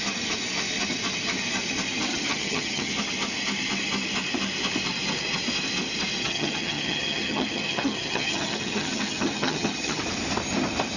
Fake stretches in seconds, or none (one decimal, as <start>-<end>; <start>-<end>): 2.1-2.9; 6.2-10.0